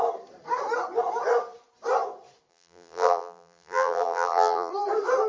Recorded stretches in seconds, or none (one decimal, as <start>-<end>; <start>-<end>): 0.0-2.5; 4.7-5.3